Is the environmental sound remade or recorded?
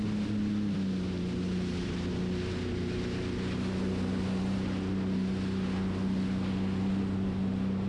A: recorded